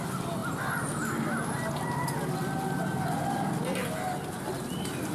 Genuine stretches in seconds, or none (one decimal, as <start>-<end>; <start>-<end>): 0.0-5.1